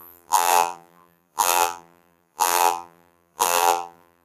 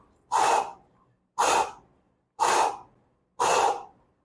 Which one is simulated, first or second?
first